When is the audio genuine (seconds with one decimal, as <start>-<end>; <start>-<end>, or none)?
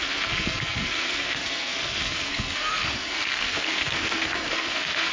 none